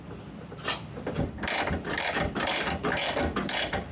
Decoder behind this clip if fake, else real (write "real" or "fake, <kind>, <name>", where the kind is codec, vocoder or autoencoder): fake, vocoder, BigVGAN v2